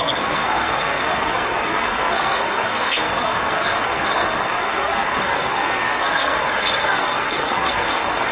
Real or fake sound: fake